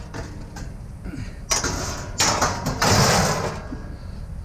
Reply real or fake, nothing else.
real